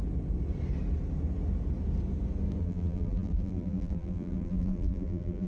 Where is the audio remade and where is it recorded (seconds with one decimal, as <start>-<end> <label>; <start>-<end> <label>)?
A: 0.0-2.6 recorded; 2.6-5.5 remade